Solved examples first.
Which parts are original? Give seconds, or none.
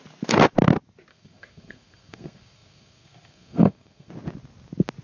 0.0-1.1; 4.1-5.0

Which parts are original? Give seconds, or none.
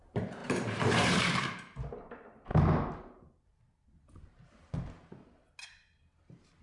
2.5-6.6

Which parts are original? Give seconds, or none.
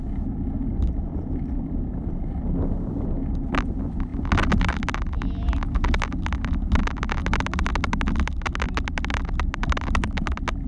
0.0-1.1; 2.4-10.7